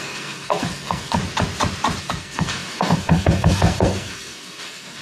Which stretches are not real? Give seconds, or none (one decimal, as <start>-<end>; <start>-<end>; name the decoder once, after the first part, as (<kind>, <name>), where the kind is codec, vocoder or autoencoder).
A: 0.0-1.2 (codec, SNAC); 2.0-5.0